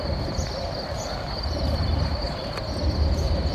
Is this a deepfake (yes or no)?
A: no